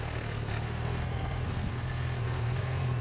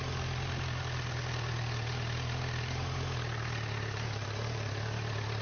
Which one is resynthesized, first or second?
first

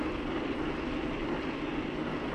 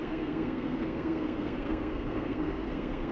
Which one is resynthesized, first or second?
second